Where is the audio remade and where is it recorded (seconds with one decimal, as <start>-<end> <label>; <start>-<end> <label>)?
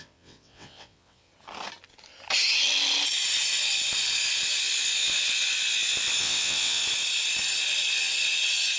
0.0-1.3 remade; 1.3-6.2 recorded; 6.2-6.8 remade; 6.8-8.8 recorded